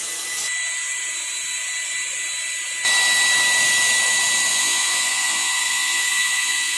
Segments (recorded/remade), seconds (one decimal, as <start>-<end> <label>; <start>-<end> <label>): 0.0-4.5 recorded; 4.5-6.8 remade